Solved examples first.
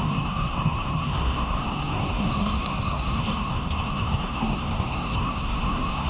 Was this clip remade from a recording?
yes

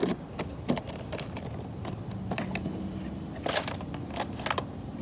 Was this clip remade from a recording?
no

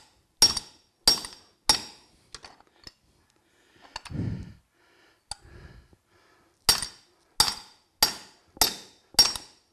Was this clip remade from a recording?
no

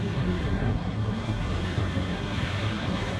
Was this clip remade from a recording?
yes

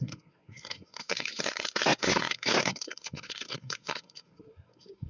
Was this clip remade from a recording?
yes